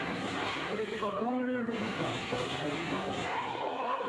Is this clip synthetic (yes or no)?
yes